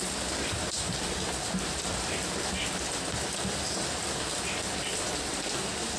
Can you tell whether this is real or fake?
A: real